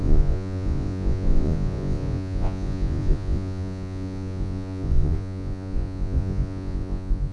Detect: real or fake fake